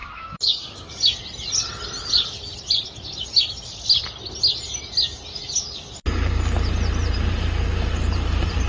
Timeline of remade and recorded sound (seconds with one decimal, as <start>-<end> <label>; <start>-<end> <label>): 0.0-0.9 remade; 0.9-8.7 recorded